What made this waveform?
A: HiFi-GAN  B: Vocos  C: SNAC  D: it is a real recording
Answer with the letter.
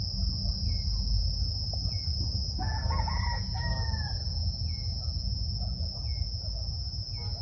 D